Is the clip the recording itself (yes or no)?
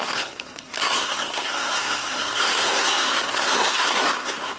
no